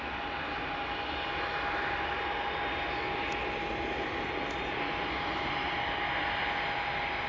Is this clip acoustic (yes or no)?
yes